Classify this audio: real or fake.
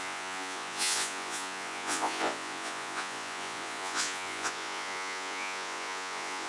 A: fake